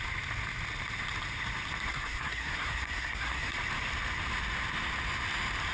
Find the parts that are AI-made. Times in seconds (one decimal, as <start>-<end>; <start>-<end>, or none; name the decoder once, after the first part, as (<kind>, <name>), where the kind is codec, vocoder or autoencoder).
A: 1.9-3.5 (codec, SNAC)